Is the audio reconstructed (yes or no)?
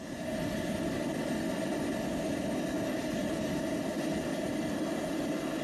no